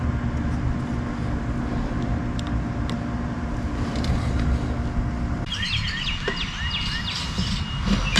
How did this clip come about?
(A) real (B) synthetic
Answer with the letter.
A